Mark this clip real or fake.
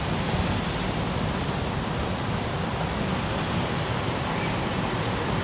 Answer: real